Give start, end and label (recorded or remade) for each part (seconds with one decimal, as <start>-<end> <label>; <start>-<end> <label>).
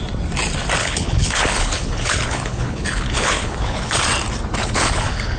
0.0-0.8 recorded; 0.8-4.0 remade; 4.0-4.6 recorded; 4.6-5.4 remade